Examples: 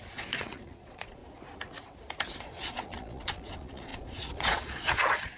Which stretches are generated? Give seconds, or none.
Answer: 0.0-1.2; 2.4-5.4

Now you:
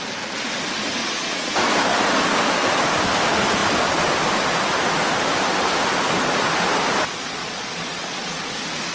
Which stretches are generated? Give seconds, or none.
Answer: 1.0-1.5; 7.4-8.4

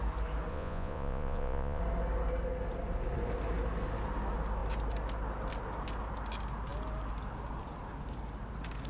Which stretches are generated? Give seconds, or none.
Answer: 0.5-1.8

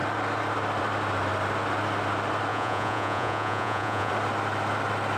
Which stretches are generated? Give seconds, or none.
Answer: 2.5-4.1

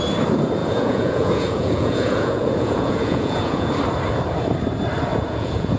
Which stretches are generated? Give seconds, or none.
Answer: 0.6-3.7; 5.1-5.8

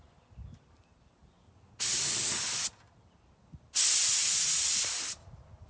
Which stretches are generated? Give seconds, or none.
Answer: 4.2-5.0